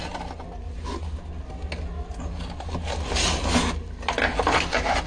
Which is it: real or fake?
real